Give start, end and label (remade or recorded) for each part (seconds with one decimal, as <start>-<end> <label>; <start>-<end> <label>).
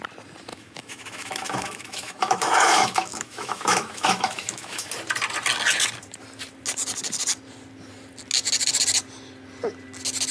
0.0-0.5 recorded; 0.5-4.9 remade; 4.9-10.3 recorded